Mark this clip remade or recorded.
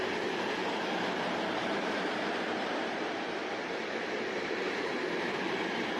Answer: remade